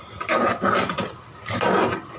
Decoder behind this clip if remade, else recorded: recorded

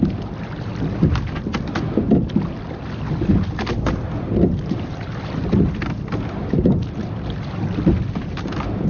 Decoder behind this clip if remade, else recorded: recorded